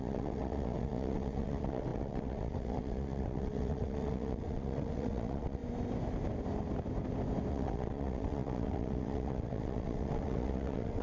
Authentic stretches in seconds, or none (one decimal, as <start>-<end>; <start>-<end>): 5.6-7.5